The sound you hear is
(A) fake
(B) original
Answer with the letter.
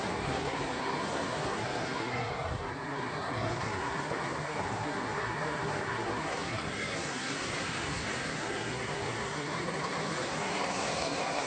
A